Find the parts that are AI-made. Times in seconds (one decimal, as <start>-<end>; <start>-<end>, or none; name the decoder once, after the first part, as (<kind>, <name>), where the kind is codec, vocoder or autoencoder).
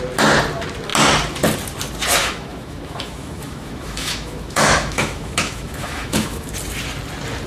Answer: 2.2-6.5 (autoencoder, DAC-VAE)